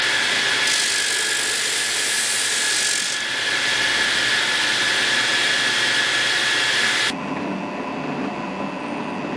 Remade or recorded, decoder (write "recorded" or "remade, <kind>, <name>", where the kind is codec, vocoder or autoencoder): recorded